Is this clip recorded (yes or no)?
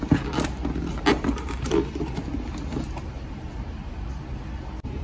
yes